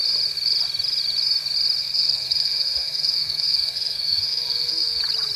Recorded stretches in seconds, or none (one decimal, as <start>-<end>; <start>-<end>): 0.0-1.8; 5.0-5.4